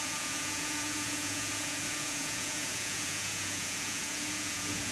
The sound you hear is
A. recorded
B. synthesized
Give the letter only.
B